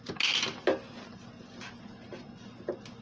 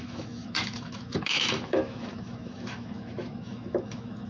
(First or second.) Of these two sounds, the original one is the first